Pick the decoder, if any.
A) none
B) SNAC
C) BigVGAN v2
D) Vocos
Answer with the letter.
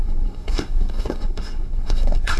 B